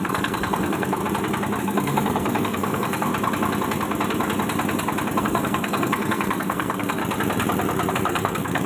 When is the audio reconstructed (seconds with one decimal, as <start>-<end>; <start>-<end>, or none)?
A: 0.0-1.0; 1.6-3.1; 5.2-7.0; 7.9-8.7